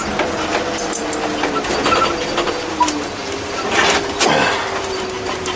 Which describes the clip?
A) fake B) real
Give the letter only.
B